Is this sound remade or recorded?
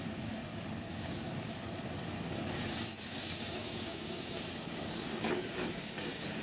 remade